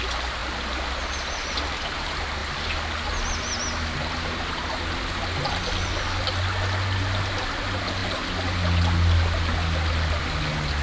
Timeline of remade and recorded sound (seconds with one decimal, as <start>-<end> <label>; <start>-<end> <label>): 0.0-10.8 recorded